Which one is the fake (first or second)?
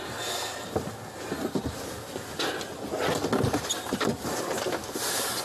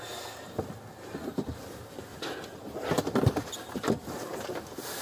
second